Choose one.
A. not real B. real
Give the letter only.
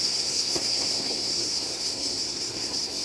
A